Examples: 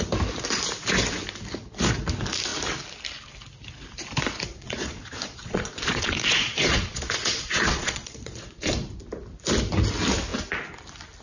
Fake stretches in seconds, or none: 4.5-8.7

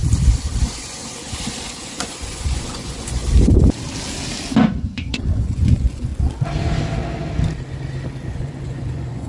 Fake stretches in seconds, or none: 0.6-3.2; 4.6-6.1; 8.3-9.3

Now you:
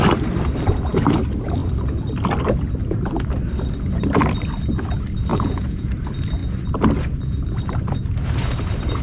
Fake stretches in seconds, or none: 5.3-5.9